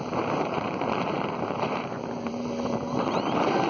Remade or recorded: remade